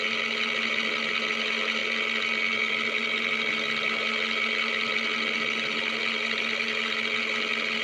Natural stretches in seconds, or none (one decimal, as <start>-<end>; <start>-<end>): 1.8-2.7